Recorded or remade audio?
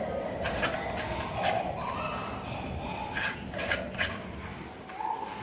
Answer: recorded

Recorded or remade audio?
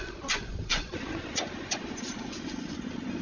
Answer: remade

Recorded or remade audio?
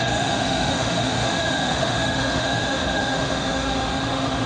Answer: remade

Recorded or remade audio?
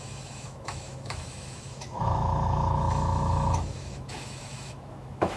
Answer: remade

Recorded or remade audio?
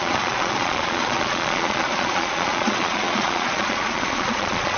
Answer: remade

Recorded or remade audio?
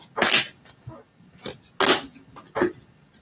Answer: recorded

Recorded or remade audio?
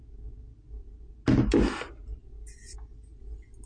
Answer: recorded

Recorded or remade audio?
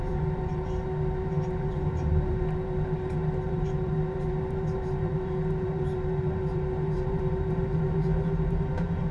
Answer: remade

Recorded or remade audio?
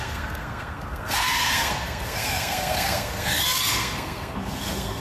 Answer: remade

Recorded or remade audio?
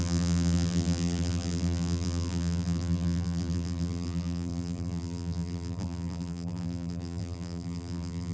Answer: remade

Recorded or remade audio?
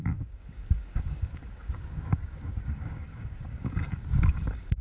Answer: remade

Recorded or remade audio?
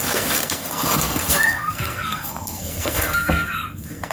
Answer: remade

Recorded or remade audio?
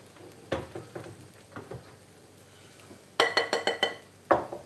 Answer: recorded